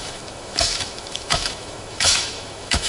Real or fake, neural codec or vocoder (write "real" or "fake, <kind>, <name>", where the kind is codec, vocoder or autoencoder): fake, autoencoder, DAC-VAE